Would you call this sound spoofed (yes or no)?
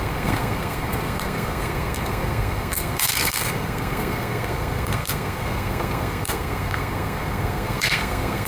yes